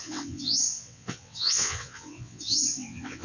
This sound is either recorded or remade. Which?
remade